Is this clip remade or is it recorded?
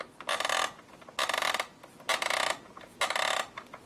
recorded